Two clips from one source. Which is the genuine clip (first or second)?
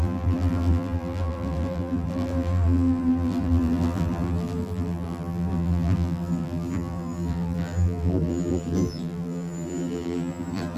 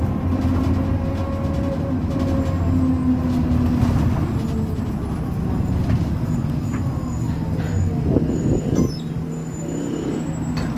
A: second